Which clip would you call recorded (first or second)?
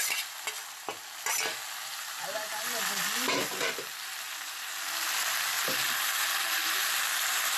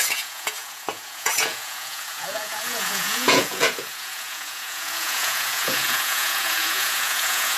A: first